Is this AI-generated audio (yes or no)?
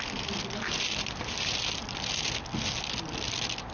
no